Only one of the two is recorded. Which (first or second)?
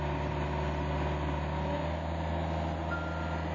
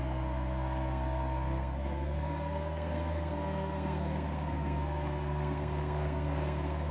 first